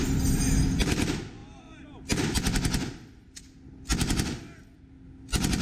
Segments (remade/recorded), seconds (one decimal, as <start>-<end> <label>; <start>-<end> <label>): 0.0-5.6 recorded